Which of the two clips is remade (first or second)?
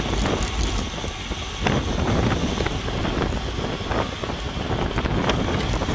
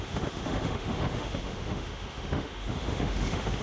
second